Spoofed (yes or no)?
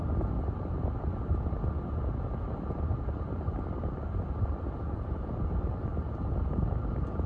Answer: no